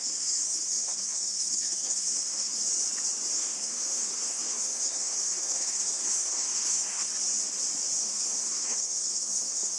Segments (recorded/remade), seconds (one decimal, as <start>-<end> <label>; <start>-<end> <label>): 0.0-2.6 remade; 2.6-3.3 recorded; 3.3-7.1 remade; 7.1-8.0 recorded; 8.0-9.8 remade